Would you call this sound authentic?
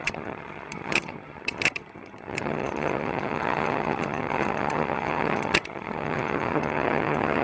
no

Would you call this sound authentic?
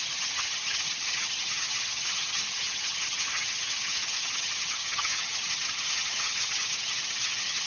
no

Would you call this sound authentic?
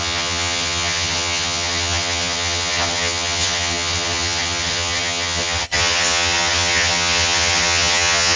no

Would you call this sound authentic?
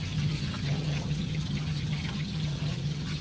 no